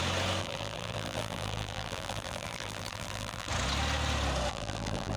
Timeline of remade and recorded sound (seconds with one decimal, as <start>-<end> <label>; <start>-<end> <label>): 0.0-0.4 recorded; 0.4-3.5 remade; 3.5-4.5 recorded; 4.5-5.2 remade